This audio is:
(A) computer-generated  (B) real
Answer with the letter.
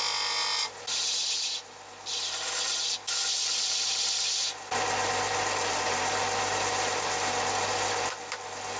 B